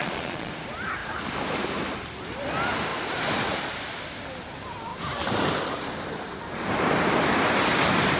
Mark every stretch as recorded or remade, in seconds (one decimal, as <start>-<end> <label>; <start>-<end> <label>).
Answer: 0.0-0.5 remade; 0.5-8.2 recorded